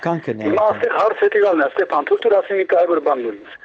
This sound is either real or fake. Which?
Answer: fake